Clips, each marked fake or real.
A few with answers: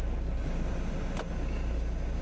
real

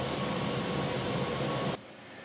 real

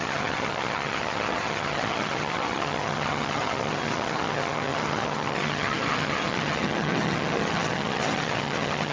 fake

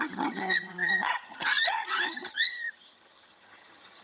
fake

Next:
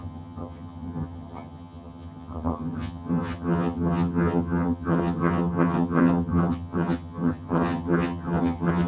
fake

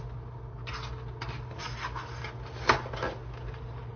real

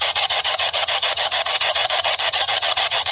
fake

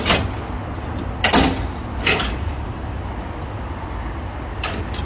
real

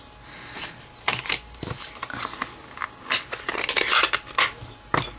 real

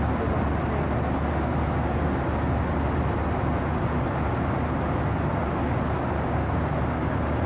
real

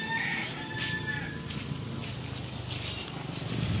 real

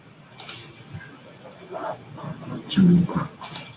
real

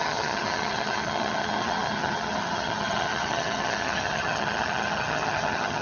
fake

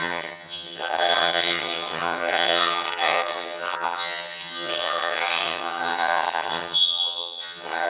fake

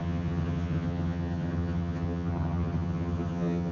fake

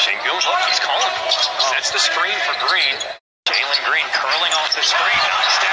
real